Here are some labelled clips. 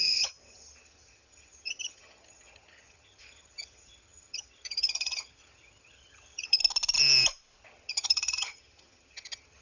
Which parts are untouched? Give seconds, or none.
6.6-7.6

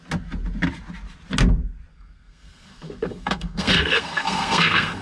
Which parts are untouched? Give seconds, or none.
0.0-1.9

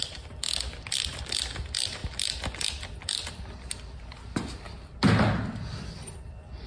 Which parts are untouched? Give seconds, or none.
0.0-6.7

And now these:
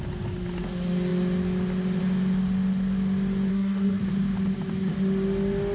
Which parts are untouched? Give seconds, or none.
0.0-3.5; 4.0-5.7